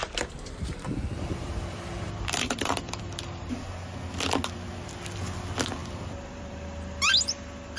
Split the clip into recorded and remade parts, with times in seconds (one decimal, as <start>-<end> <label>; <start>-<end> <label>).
0.0-3.0 remade; 3.0-5.8 recorded; 5.8-7.2 remade; 7.2-7.8 recorded